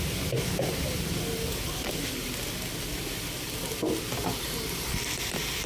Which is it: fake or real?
real